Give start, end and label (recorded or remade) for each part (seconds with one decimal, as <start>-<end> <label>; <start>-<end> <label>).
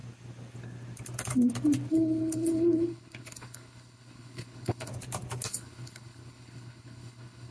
0.0-1.9 recorded; 1.9-4.9 remade; 4.9-5.5 recorded; 5.5-7.5 remade